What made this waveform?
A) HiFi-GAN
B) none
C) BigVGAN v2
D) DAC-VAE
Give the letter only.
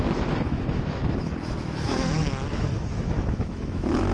D